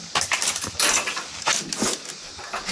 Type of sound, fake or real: real